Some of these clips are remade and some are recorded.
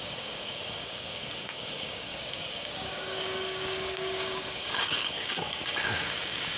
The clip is remade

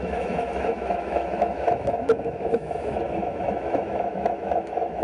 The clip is remade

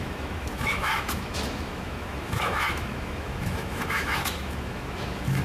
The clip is remade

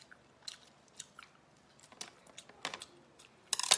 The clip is recorded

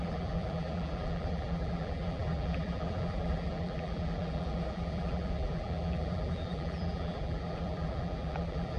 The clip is remade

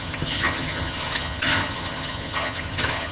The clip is remade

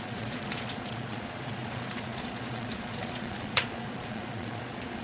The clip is remade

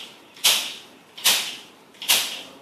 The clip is remade